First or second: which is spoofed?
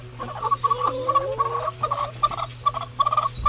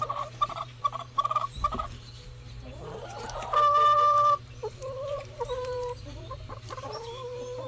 second